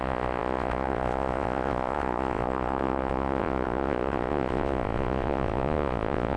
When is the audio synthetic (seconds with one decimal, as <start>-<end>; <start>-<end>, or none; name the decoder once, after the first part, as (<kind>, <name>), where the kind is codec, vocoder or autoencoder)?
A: 0.0-6.4 (vocoder, Vocos)